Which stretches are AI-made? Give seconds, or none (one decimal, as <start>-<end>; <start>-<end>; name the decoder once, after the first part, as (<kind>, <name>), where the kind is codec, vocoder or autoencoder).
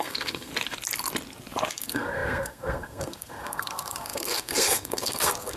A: 0.0-0.5 (codec, SNAC); 1.7-5.6